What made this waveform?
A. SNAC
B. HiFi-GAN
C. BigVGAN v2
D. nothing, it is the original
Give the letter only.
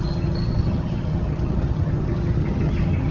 B